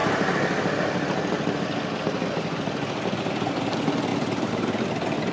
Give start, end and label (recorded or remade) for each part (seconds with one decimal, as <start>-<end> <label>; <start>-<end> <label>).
0.0-4.1 recorded; 4.1-4.8 remade; 4.8-5.3 recorded